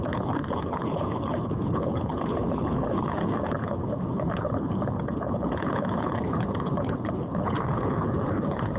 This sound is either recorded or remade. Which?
remade